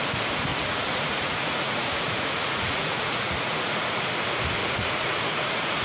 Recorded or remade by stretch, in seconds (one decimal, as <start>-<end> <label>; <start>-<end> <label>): 0.0-0.5 recorded; 0.5-4.0 remade; 4.0-4.6 recorded; 4.6-5.8 remade